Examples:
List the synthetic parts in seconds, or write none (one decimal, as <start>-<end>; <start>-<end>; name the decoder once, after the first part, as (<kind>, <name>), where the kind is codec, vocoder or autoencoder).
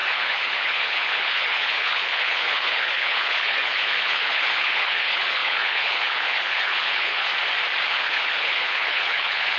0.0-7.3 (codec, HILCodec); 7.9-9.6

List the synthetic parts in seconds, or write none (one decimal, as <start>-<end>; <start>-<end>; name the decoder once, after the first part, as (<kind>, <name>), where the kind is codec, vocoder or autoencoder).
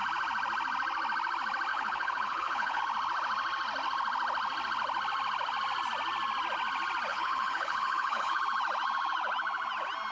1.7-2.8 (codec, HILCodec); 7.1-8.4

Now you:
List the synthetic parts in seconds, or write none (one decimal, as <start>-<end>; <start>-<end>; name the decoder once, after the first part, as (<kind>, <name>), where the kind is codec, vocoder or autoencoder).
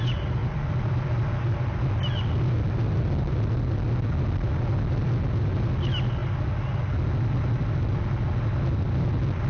none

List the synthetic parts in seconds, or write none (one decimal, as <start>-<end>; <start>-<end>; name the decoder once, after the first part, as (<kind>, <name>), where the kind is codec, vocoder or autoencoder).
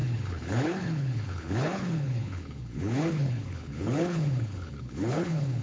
0.0-5.6 (codec, HILCodec)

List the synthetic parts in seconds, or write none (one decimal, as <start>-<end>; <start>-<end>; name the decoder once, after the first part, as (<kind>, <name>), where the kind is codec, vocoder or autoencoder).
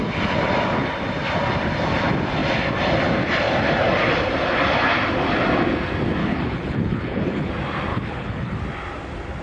6.2-7.5 (codec, HILCodec); 7.9-8.6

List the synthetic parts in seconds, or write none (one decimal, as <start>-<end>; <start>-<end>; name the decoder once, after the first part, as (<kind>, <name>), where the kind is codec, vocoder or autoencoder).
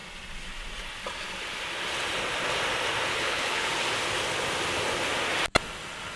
3.1-3.7 (codec, HILCodec)